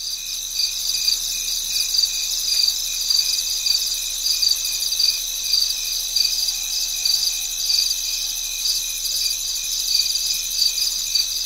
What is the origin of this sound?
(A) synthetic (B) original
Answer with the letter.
A